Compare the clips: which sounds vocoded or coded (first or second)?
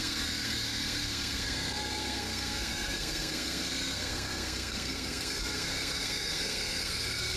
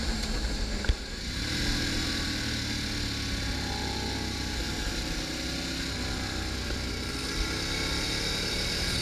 first